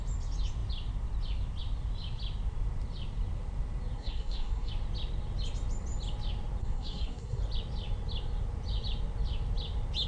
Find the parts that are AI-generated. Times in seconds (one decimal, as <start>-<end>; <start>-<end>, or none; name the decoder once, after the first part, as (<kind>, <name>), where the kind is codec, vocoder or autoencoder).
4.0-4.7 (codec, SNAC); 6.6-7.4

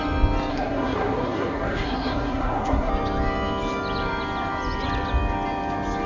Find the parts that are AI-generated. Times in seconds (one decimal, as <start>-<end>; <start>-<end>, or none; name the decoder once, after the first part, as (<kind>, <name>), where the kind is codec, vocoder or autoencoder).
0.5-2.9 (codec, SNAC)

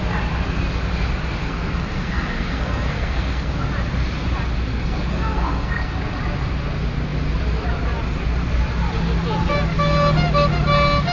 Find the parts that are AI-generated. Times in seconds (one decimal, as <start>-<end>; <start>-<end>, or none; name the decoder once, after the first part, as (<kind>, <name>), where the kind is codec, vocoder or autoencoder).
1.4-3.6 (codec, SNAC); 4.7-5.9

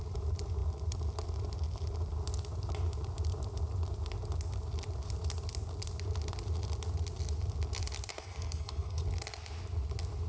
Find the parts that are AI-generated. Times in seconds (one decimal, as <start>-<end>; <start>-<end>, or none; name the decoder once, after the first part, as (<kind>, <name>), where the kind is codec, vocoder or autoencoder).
8.1-9.0 (codec, SNAC)

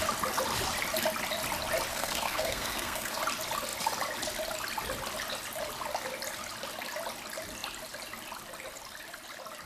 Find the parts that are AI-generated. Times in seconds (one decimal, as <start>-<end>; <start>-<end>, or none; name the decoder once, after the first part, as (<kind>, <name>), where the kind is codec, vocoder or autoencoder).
1.9-3.2 (codec, SNAC)

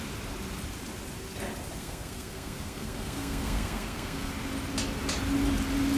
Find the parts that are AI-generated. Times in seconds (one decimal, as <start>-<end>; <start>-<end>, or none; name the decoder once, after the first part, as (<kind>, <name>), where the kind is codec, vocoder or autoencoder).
1.8-4.3 (codec, SNAC)

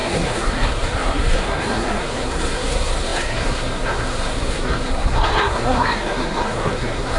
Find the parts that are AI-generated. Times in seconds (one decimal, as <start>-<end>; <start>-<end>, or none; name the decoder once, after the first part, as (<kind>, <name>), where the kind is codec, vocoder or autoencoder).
0.0-7.2 (codec, SNAC)

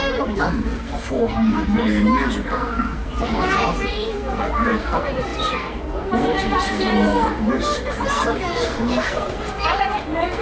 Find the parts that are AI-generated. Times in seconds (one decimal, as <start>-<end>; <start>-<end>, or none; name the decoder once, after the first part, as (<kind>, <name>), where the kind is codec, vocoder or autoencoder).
0.0-10.4 (codec, SNAC)